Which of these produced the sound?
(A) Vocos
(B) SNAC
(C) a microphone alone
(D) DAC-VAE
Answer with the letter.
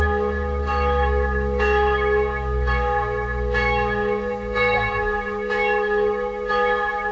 D